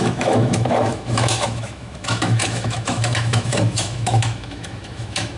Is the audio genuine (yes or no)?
no